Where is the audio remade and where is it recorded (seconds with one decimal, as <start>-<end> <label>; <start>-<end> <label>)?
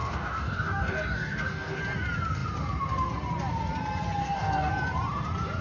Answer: 0.0-1.8 remade; 1.8-4.2 recorded; 4.2-4.7 remade; 4.7-5.6 recorded